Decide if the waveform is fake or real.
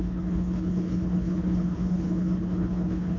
fake